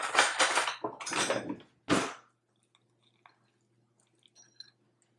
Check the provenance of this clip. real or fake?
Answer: real